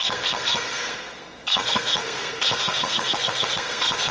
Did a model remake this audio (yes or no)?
yes